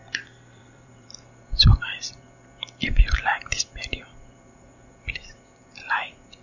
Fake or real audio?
fake